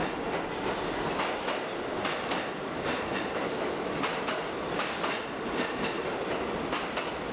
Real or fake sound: real